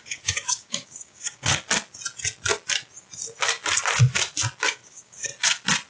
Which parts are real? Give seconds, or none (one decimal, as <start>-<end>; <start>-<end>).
1.5-4.7; 5.3-5.9